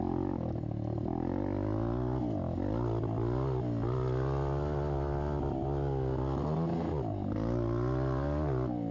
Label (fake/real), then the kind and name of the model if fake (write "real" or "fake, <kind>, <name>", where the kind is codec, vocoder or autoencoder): real